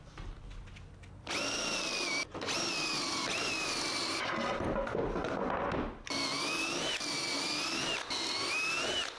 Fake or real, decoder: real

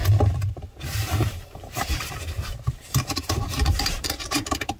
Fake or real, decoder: fake, vocoder, BigVGAN v2